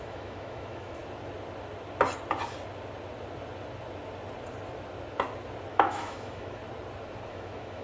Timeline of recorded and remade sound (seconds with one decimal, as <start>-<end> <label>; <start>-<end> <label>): 0.0-1.0 remade; 1.0-5.7 recorded; 5.7-6.6 remade; 6.6-7.3 recorded; 7.3-7.8 remade